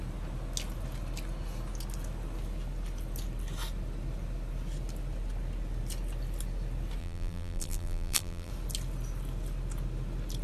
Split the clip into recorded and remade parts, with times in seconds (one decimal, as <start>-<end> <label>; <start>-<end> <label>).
0.0-7.0 recorded; 7.0-8.5 remade; 8.5-10.4 recorded